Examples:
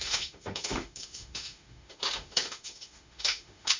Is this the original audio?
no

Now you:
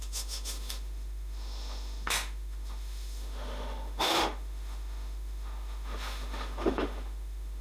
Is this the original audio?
no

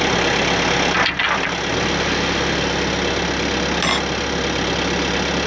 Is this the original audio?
yes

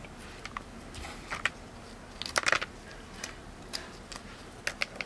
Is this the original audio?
yes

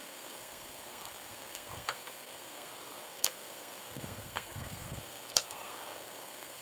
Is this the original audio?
no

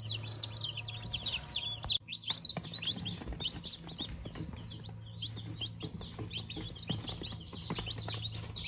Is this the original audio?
yes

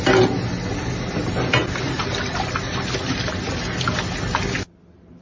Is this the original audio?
yes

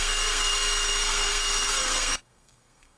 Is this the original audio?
no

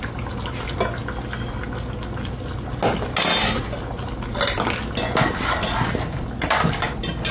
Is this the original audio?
yes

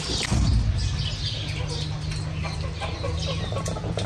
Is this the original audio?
yes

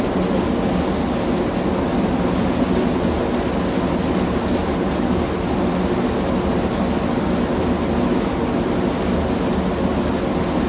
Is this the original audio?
yes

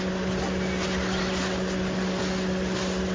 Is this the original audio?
yes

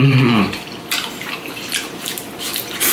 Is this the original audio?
no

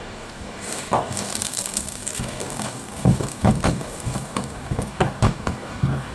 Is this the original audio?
no